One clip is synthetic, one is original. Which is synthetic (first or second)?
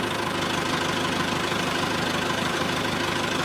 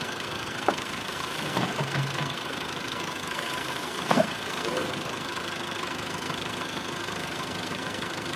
second